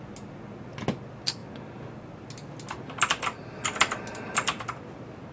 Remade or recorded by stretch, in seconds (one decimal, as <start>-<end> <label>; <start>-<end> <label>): 0.0-5.3 recorded